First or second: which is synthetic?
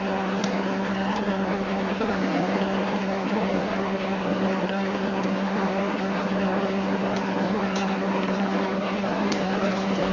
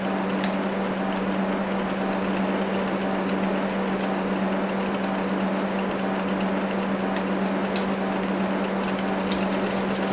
first